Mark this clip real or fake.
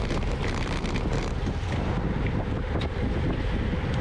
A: real